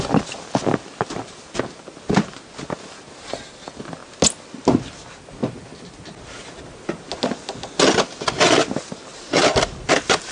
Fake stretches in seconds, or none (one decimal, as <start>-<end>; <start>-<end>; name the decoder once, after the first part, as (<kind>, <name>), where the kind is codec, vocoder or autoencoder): none